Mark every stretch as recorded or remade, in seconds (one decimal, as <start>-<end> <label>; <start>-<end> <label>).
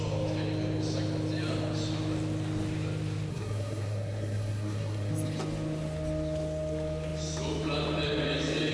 0.0-3.3 recorded; 3.3-5.1 remade; 5.1-8.7 recorded